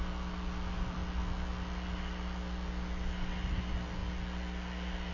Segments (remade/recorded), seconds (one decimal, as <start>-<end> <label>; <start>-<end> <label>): 0.0-5.1 recorded